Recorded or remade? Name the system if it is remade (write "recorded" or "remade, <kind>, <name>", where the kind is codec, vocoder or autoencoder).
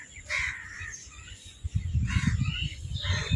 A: remade, vocoder, Vocos